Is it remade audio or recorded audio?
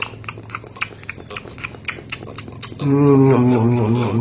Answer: recorded